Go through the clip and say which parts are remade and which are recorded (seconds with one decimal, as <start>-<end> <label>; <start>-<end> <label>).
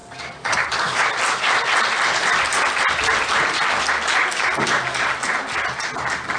0.0-1.0 remade; 1.0-6.4 recorded